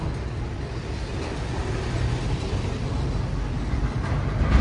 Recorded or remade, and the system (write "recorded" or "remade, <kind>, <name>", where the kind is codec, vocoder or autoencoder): recorded